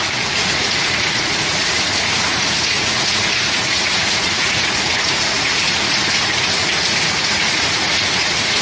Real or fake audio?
fake